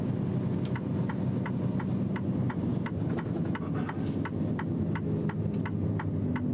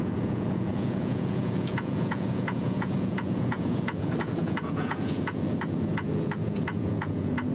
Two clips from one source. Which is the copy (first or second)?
second